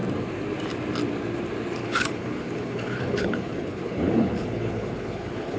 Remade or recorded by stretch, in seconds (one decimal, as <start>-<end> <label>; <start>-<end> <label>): 0.0-1.8 recorded; 1.8-5.6 remade